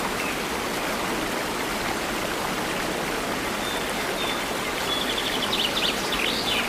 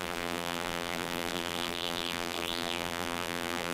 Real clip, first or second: first